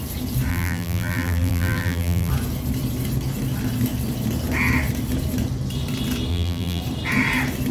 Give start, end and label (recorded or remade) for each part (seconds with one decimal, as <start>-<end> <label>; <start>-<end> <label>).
0.0-0.5 recorded; 0.5-2.3 remade; 2.3-6.3 recorded; 6.3-6.8 remade; 6.8-7.7 recorded